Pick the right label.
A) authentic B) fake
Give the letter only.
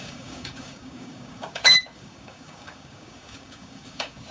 B